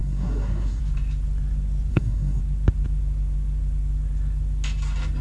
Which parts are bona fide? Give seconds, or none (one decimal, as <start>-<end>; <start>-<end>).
0.8-1.9; 2.4-5.2